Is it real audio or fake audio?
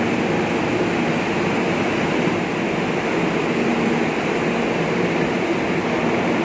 real